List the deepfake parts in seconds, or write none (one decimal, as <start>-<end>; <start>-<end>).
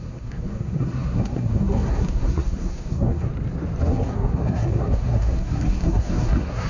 0.0-3.3; 3.8-6.7